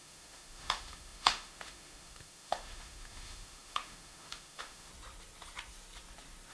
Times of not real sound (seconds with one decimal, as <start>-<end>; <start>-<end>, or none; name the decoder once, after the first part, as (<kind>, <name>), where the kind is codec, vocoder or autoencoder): 0.0-4.9 (autoencoder, DAC-VAE)